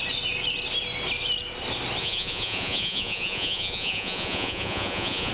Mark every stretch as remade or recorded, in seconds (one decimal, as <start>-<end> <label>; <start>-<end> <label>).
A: 0.0-2.0 recorded; 2.0-5.3 remade